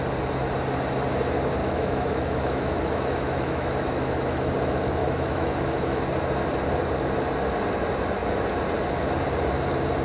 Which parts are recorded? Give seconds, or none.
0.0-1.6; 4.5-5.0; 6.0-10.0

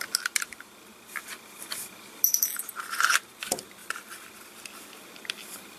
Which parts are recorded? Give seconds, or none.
0.0-3.8; 4.5-5.8

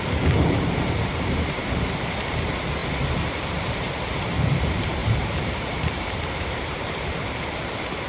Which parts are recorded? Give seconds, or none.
2.8-3.3

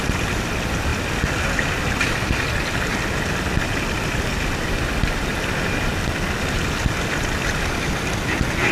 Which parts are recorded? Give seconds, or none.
0.0-8.7

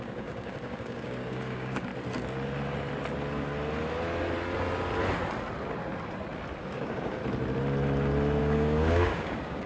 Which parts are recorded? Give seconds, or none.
1.9-6.6; 7.2-8.4